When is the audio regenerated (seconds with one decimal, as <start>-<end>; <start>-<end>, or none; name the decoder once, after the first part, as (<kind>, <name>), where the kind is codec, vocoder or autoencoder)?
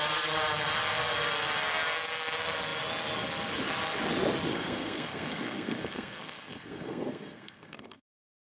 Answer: 4.5-8.5 (codec, SNAC)